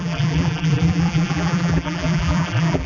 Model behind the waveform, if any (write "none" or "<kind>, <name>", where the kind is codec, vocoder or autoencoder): vocoder, BigVGAN v2